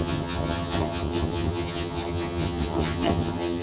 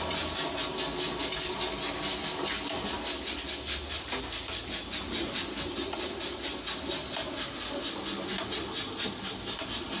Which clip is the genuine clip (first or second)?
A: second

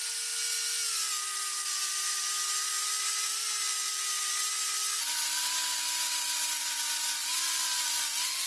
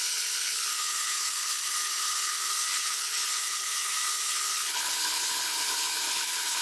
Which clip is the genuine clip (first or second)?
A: first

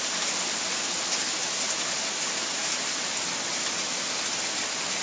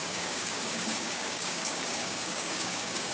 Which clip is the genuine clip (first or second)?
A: first